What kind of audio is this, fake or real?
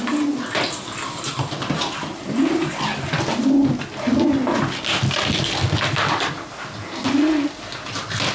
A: real